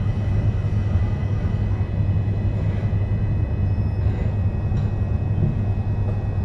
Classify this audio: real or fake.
real